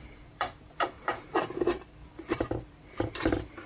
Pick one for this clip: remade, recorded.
remade